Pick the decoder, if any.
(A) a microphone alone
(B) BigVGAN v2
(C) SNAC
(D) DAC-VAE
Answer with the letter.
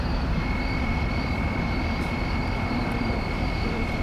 B